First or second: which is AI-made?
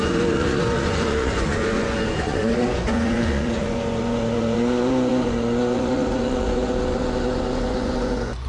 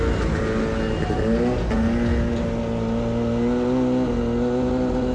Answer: first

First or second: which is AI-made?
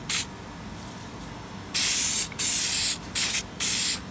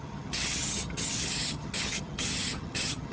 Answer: second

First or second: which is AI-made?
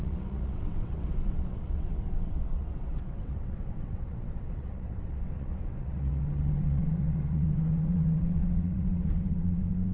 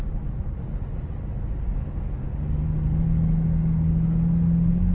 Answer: first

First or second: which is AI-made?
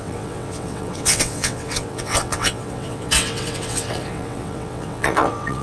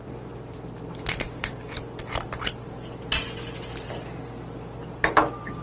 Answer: first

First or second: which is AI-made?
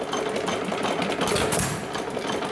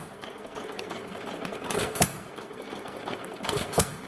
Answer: second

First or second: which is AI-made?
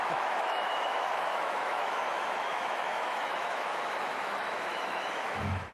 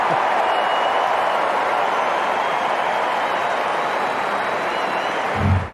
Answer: first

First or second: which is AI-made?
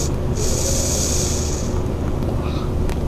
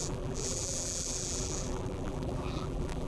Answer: second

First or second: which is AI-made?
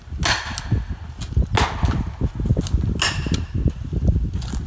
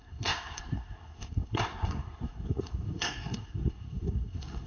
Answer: second